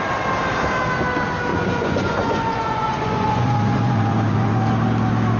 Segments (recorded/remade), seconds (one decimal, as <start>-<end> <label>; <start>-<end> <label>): 0.0-1.5 recorded; 1.5-4.7 remade; 4.7-5.4 recorded